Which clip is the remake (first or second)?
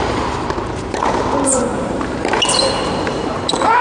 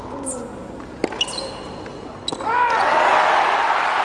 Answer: first